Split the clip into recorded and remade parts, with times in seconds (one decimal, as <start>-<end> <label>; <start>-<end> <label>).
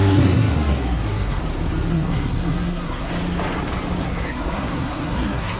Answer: 0.0-1.4 remade; 1.4-1.9 recorded; 1.9-3.1 remade; 3.1-4.0 recorded; 4.0-5.6 remade